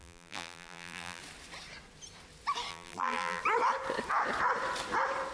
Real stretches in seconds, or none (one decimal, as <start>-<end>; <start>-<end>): 1.2-2.7; 3.4-5.3